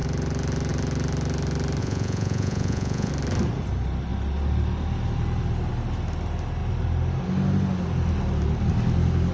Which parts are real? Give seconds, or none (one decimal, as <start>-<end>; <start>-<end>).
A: 0.0-1.8; 3.1-9.3